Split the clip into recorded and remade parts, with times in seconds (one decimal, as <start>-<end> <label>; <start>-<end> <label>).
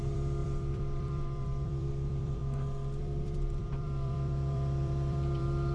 0.0-2.4 remade; 2.4-3.0 recorded; 3.0-5.7 remade